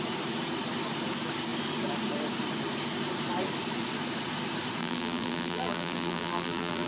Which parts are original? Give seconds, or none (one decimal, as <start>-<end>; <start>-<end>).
0.0-4.8